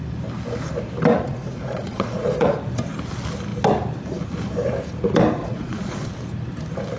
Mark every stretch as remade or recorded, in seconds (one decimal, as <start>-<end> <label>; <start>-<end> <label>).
0.0-1.1 recorded; 1.1-2.6 remade; 2.6-5.4 recorded; 5.4-6.1 remade; 6.1-7.0 recorded

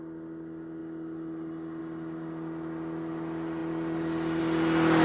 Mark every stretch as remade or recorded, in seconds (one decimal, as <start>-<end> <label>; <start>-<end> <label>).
0.0-5.0 recorded

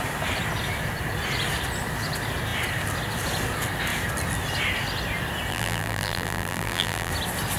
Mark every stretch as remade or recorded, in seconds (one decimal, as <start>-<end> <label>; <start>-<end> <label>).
0.0-5.5 recorded; 5.5-7.1 remade; 7.1-7.6 recorded

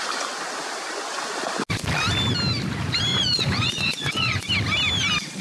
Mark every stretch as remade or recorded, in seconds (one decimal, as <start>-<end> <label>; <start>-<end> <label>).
0.0-3.1 recorded; 3.1-4.5 remade; 4.5-5.4 recorded

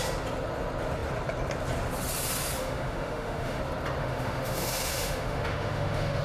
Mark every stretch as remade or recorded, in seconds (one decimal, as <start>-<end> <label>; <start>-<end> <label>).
0.0-2.6 recorded; 2.6-3.6 remade; 3.6-4.0 recorded; 4.0-6.2 remade

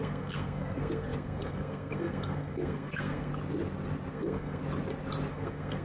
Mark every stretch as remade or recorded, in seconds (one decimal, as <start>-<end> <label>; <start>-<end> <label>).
0.0-3.3 remade; 3.3-4.1 recorded; 4.1-4.6 remade; 4.6-5.3 recorded; 5.3-5.8 remade

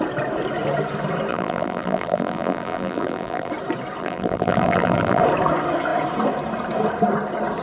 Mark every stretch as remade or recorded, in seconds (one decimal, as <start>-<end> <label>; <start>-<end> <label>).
0.0-1.3 recorded; 1.3-3.5 remade; 3.5-4.0 recorded; 4.0-5.2 remade; 5.2-7.6 recorded